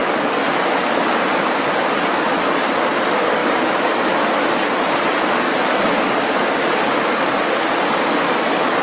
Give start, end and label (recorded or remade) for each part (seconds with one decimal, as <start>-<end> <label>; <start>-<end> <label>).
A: 0.0-8.8 recorded